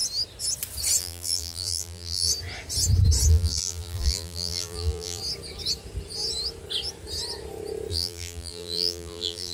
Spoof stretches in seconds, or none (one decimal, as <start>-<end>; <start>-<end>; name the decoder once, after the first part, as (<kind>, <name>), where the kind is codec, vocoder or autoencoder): 1.0-2.3 (vocoder, BigVGAN v2); 3.3-5.2; 7.9-9.5